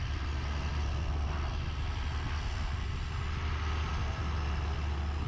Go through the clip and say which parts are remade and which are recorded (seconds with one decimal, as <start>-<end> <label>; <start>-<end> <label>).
0.0-5.3 recorded